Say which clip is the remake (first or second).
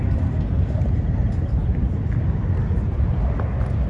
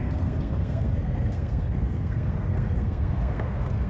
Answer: second